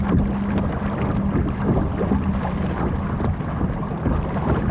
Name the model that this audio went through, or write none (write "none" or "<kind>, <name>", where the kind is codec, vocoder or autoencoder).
none